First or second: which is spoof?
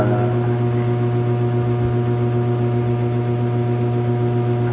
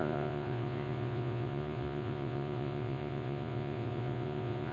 second